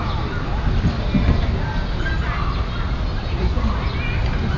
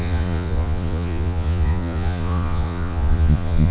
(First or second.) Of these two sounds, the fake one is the second